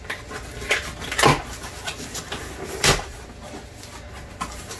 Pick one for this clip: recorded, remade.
recorded